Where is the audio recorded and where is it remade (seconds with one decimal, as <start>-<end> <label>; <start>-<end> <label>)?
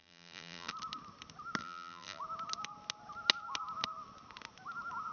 0.0-0.7 remade; 0.7-1.6 recorded; 1.6-2.2 remade; 2.2-5.1 recorded